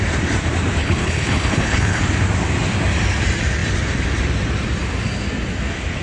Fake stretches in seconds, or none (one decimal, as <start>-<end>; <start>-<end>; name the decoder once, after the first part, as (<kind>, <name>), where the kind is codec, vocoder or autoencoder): 0.8-2.0 (codec, HILCodec)